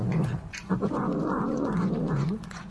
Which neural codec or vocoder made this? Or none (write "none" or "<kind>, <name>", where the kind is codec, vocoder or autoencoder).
vocoder, Vocos